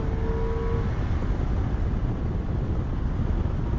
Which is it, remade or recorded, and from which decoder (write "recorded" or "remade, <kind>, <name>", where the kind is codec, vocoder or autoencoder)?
recorded